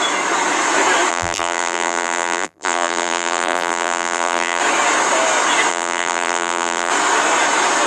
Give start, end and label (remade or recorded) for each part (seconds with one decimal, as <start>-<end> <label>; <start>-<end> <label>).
0.0-1.1 recorded; 1.1-4.6 remade; 4.6-5.7 recorded; 5.7-6.9 remade; 6.9-7.9 recorded